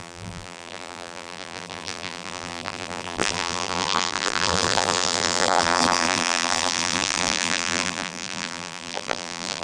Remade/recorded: remade